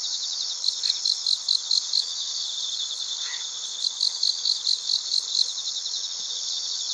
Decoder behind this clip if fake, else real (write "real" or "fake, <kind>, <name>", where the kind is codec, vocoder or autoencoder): fake, codec, HILCodec